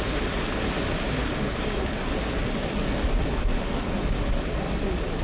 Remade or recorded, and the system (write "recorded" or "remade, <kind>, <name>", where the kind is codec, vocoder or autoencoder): recorded